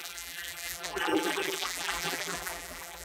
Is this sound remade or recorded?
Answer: remade